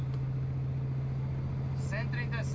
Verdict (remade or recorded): recorded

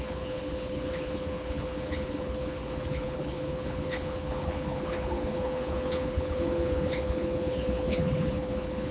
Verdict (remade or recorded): remade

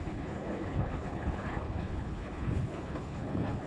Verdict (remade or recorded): remade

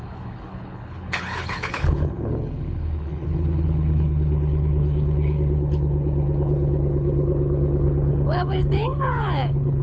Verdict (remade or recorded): remade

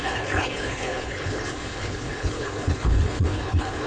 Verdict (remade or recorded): remade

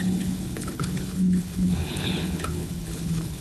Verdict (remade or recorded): remade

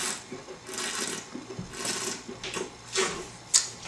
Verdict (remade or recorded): recorded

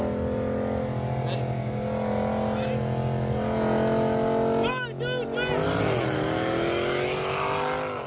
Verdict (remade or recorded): recorded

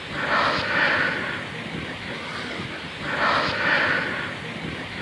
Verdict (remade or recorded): recorded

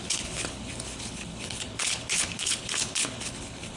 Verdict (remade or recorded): remade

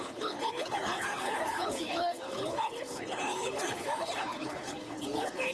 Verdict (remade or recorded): remade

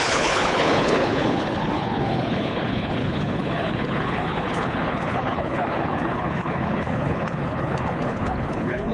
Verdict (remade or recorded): remade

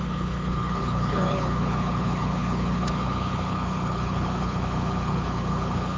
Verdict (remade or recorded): remade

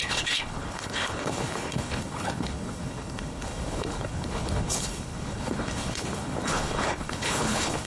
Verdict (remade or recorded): remade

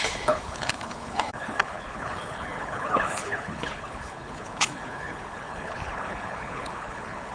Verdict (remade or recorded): remade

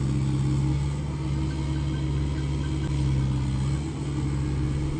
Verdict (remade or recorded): recorded